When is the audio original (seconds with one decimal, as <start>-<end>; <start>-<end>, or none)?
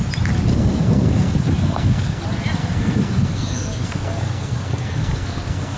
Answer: 0.0-0.5; 2.2-2.6